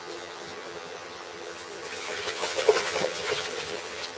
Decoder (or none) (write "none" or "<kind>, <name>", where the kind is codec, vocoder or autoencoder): vocoder, HiFi-GAN